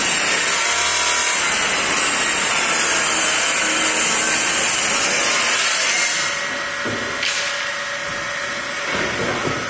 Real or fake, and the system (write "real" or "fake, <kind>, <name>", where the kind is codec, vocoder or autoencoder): real